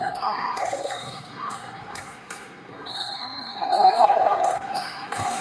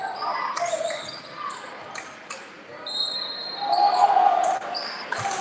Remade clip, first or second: first